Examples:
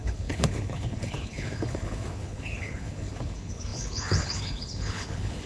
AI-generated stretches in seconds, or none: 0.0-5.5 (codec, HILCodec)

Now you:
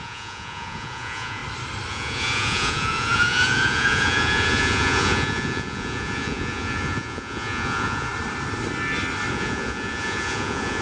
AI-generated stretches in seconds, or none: 0.0-1.4 (vocoder, Vocos); 1.9-8.1; 9.3-10.8

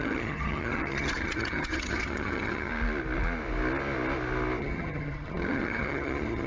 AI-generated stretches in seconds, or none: 0.0-2.7 (vocoder, HiFi-GAN); 4.6-6.5

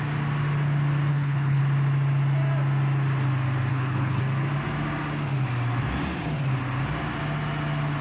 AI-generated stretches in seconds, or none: 1.1-1.6 (codec, HILCodec); 3.7-4.2

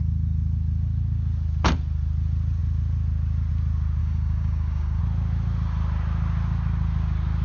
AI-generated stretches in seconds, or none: 4.0-5.0 (codec, DAC)

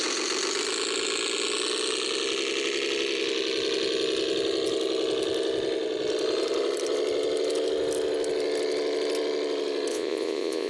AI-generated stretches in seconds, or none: 9.9-10.7 (vocoder, Vocos)

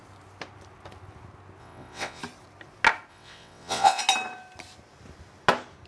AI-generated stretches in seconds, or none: 1.6-2.2 (vocoder, WaveNeXt); 3.1-4.0